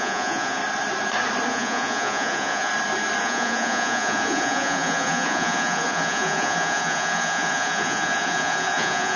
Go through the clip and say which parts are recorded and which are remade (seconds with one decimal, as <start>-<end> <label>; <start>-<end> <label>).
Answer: 0.0-0.6 remade; 0.6-1.5 recorded; 1.5-2.7 remade; 2.7-3.2 recorded; 3.2-9.2 remade